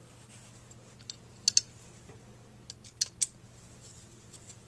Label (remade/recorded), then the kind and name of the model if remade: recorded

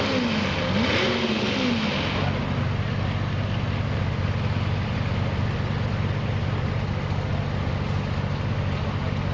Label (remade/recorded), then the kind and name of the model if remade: recorded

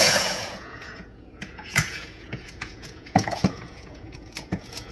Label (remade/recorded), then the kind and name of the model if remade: remade, vocoder, Vocos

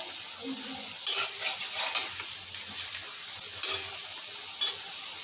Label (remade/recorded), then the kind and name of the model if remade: recorded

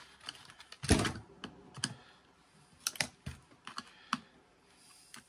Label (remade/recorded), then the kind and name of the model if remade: recorded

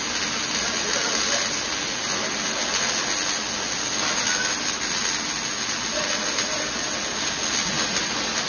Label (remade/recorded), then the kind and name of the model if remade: recorded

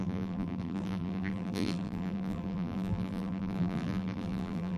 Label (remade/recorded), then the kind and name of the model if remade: remade, vocoder, BigVGAN v2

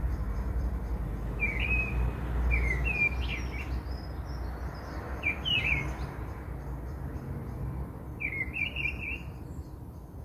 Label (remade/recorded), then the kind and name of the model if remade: recorded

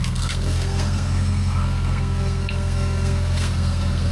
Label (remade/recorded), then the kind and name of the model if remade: remade, codec, SNAC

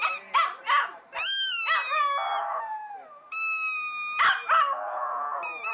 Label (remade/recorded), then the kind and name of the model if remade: recorded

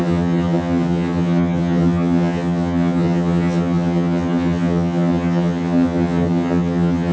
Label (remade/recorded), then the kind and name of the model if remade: remade, vocoder, HiFi-GAN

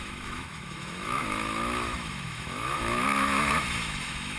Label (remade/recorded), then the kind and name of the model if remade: remade, autoencoder, DAC-VAE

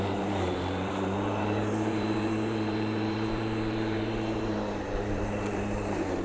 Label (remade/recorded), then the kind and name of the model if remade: remade, vocoder, BigVGAN v2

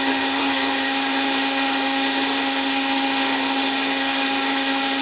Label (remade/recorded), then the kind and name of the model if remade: remade, autoencoder, DAC-VAE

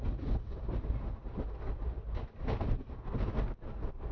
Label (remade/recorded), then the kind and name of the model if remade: recorded